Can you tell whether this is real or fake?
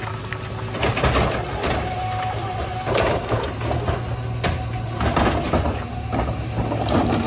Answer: real